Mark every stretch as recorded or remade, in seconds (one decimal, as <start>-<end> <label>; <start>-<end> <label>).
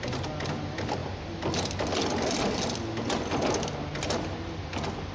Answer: 0.0-5.1 recorded